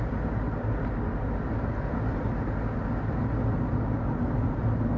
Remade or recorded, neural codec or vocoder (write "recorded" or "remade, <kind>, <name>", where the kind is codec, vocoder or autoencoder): recorded